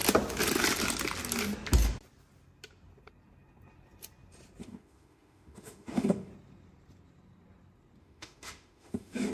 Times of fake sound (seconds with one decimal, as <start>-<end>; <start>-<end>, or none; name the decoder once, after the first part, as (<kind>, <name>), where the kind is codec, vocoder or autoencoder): 4.6-6.3 (autoencoder, DAC-VAE); 8.0-9.3